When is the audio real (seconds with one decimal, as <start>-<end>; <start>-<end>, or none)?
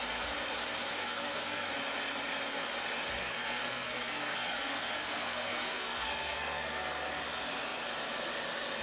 0.0-1.0; 1.7-3.2; 7.1-8.8